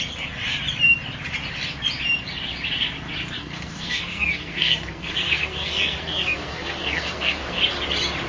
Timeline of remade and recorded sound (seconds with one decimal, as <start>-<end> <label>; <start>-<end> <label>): 0.0-3.4 recorded; 3.4-7.6 remade; 7.6-8.3 recorded